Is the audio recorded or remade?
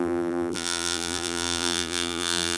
remade